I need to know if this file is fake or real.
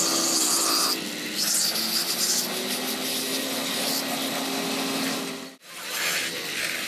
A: real